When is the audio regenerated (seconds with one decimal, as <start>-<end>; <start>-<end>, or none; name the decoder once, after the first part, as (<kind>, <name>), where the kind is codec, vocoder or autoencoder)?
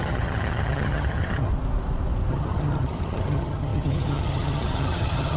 0.0-1.5 (vocoder, HiFi-GAN); 2.3-5.4